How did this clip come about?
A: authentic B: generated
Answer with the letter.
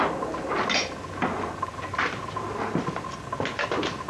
A